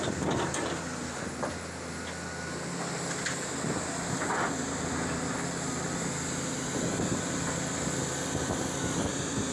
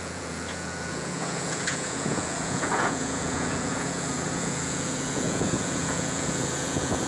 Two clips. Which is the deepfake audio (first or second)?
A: second